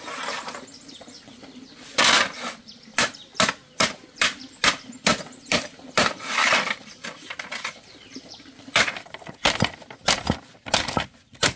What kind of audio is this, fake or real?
fake